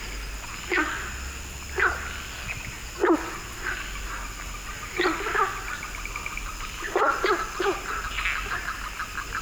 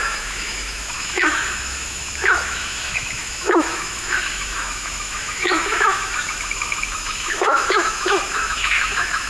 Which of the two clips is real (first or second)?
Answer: first